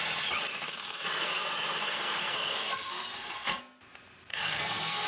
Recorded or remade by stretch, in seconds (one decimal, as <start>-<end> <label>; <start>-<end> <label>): 0.0-0.5 recorded; 0.5-3.6 remade; 3.6-4.3 recorded; 4.3-5.1 remade